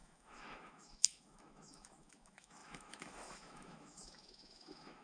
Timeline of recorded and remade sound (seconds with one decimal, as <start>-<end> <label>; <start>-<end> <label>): 0.0-5.0 remade